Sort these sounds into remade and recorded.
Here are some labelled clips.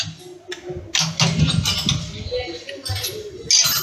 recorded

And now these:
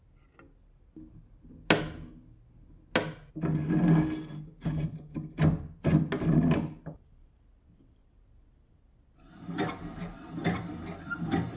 recorded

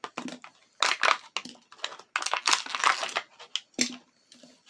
recorded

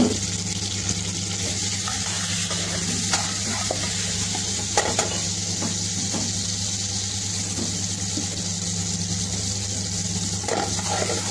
recorded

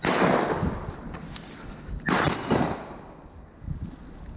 recorded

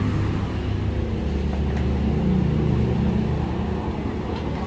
recorded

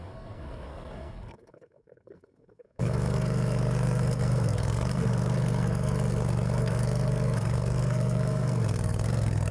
remade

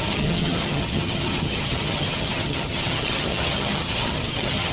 remade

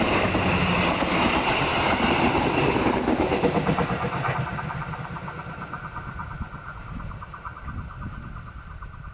recorded